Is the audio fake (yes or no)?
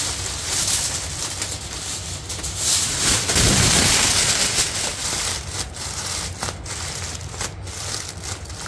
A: no